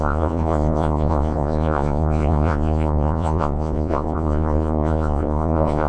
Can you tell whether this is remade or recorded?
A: remade